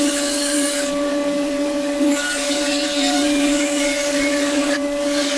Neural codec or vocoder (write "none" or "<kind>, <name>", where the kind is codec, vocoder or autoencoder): codec, DAC